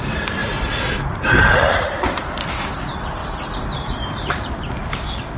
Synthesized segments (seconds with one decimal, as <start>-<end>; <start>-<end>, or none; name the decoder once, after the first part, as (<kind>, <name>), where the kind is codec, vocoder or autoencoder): 0.0-5.4 (vocoder, BigVGAN v2)